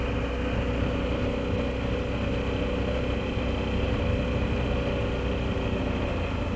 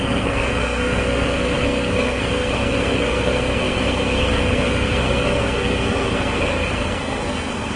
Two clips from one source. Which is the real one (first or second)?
first